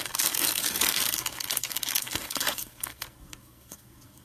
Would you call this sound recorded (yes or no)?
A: no